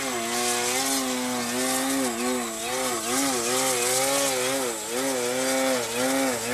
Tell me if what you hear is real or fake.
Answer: real